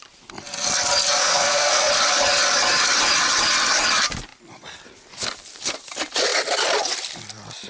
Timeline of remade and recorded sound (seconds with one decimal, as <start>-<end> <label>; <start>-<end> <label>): 0.0-1.2 recorded; 1.2-1.9 remade; 1.9-7.7 recorded